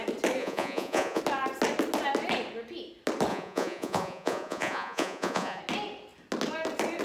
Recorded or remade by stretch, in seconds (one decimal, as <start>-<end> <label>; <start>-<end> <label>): 0.0-0.4 recorded; 0.4-1.2 remade; 1.2-3.3 recorded; 3.3-5.6 remade; 5.6-7.0 recorded

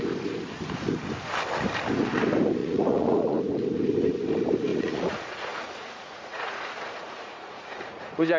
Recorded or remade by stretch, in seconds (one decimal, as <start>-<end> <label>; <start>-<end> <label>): 0.0-2.6 recorded; 2.6-3.4 remade; 3.4-4.7 recorded; 4.7-8.4 remade

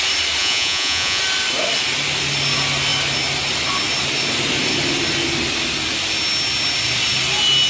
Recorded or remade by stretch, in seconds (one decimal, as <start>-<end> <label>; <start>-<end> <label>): 0.0-0.4 recorded; 0.4-1.2 remade; 1.2-7.7 recorded

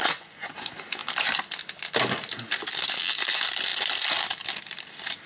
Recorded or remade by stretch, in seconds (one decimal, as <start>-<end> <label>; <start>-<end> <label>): 0.0-0.5 remade; 0.5-5.3 recorded

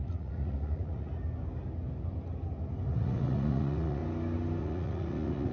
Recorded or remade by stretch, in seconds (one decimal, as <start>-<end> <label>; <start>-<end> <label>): 0.0-1.1 remade; 1.1-2.9 recorded; 2.9-4.0 remade; 4.0-4.6 recorded; 4.6-5.5 remade

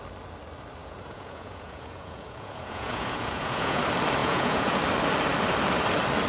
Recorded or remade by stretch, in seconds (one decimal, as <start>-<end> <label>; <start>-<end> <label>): 0.0-0.8 recorded; 0.8-3.8 remade; 3.8-4.2 recorded; 4.2-4.8 remade; 4.8-6.3 recorded

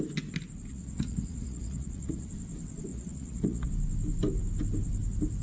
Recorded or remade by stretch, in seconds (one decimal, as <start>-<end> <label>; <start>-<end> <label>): 0.0-0.7 recorded; 0.7-2.3 remade; 2.3-2.9 recorded; 2.9-3.7 remade; 3.7-5.4 recorded

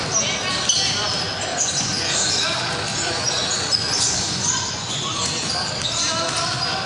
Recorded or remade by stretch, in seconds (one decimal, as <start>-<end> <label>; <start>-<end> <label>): 0.0-1.5 recorded; 1.5-2.4 remade; 2.4-2.9 recorded; 2.9-5.5 remade; 5.5-6.9 recorded